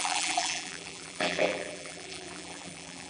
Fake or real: fake